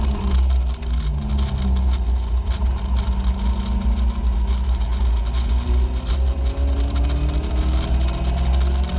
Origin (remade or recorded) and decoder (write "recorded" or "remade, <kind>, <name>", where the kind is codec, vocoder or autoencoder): recorded